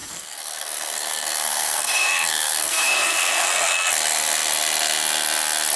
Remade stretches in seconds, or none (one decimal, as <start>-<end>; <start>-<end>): 0.0-3.5